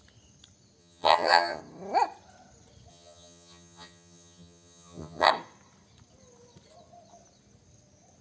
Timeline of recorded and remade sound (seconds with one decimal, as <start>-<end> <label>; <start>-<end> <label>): 0.0-0.8 recorded; 0.8-1.6 remade; 1.6-2.9 recorded; 2.9-5.3 remade; 5.3-8.2 recorded